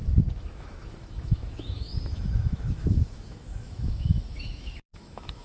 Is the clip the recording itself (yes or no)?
no